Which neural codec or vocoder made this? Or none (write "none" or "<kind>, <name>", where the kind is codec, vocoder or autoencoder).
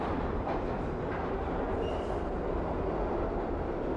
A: none